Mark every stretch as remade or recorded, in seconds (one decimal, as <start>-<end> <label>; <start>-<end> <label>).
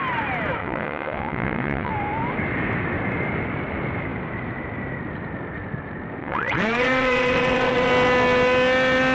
0.0-0.6 recorded; 0.6-1.9 remade; 1.9-6.2 recorded; 6.2-7.9 remade; 7.9-9.1 recorded